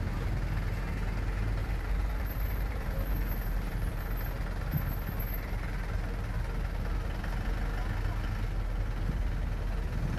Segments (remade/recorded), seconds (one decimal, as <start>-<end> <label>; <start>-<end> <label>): 0.0-1.6 recorded; 1.6-4.0 remade; 4.0-10.2 recorded

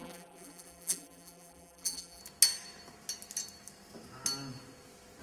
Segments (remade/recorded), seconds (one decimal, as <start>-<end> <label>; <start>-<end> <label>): 0.0-2.2 remade; 2.2-5.2 recorded

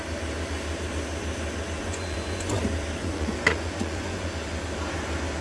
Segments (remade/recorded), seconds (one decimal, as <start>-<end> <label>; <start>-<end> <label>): 0.0-1.8 recorded; 1.8-2.6 remade; 2.6-3.0 recorded; 3.0-4.3 remade; 4.3-5.4 recorded

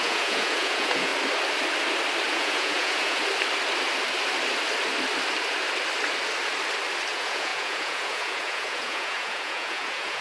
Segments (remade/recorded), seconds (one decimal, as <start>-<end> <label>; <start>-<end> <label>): 0.0-1.1 remade; 1.1-2.3 recorded; 2.3-3.2 remade; 3.2-7.1 recorded; 7.1-10.2 remade

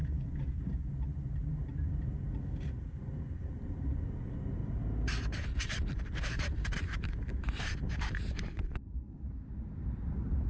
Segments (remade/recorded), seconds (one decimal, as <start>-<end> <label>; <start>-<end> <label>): 0.0-4.6 remade; 4.6-5.2 recorded; 5.2-10.5 remade

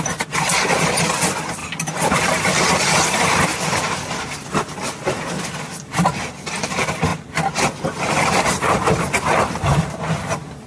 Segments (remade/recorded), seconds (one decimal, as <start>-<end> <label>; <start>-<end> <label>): 0.0-7.1 remade; 7.1-9.0 recorded; 9.0-9.7 remade; 9.7-10.2 recorded; 10.2-10.7 remade

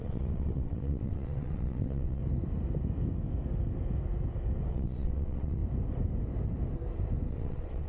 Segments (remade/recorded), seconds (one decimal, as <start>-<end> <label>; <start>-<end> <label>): 0.0-2.2 remade; 2.2-4.7 recorded; 4.7-5.6 remade; 5.6-7.3 recorded; 7.3-7.9 remade

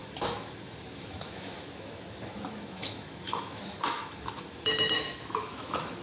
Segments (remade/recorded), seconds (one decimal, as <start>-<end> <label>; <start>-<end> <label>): 0.0-6.0 remade